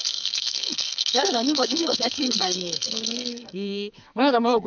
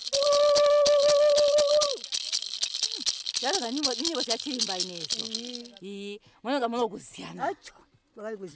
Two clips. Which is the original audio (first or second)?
second